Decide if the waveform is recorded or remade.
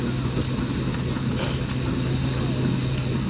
recorded